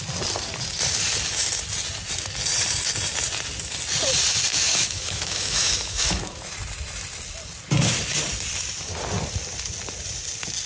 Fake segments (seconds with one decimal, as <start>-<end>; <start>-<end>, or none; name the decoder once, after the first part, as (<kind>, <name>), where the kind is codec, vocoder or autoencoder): 4.5-6.5 (autoencoder, DAC-VAE)